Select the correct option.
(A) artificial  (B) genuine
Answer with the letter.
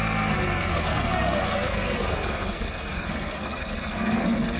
A